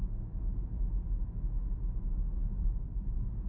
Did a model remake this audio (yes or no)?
no